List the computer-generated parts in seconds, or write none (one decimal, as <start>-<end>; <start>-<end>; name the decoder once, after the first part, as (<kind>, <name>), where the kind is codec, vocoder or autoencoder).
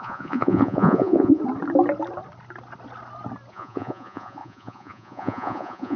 0.0-1.4 (vocoder, Vocos); 3.5-6.0